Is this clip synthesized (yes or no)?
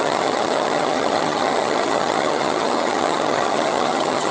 yes